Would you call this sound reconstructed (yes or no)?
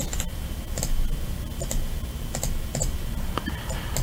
no